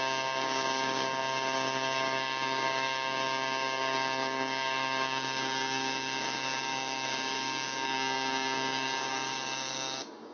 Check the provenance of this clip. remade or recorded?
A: remade